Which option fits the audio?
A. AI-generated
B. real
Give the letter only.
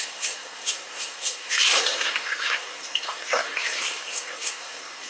A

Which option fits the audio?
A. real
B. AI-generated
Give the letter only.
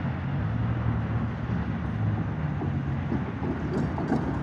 A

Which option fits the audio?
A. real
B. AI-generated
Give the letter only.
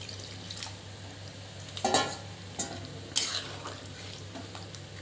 A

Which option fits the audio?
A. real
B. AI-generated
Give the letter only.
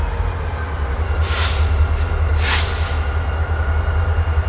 A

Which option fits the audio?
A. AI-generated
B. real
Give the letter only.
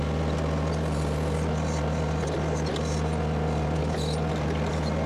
B